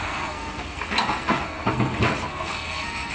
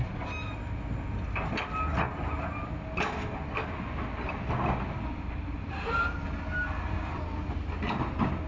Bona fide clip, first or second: second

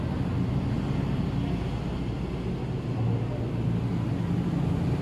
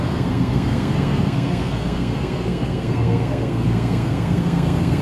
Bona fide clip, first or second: first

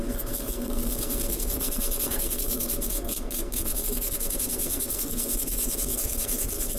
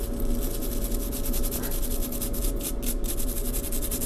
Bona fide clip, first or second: second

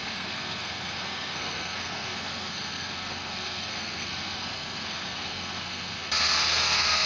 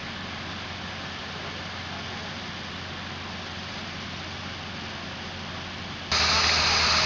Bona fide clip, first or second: second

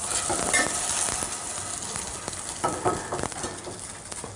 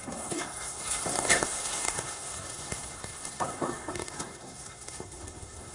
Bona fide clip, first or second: first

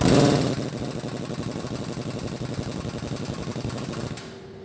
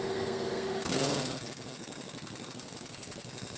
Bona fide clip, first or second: first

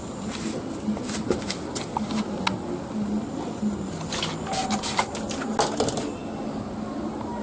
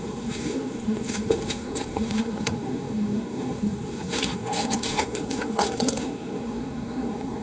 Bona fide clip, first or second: first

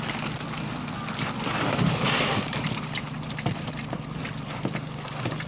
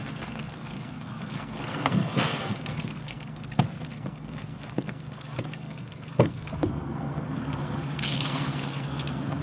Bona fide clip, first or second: first